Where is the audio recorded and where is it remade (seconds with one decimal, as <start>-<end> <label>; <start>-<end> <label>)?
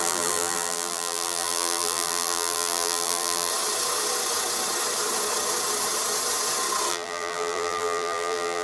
0.0-3.5 remade; 3.5-6.9 recorded; 6.9-8.6 remade